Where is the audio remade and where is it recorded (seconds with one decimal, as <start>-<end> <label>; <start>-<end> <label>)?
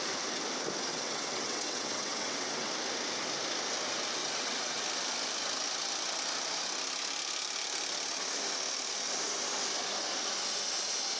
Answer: 0.0-0.9 recorded; 0.9-2.7 remade; 2.7-4.2 recorded; 4.2-4.8 remade; 4.8-11.2 recorded